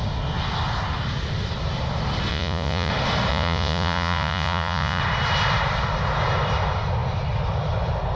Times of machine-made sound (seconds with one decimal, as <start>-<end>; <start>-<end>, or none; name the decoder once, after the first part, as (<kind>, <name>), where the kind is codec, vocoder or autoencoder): 2.3-2.9 (vocoder, Vocos); 3.3-5.0